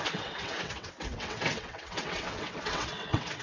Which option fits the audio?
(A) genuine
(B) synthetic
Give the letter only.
B